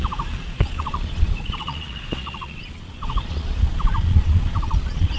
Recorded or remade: remade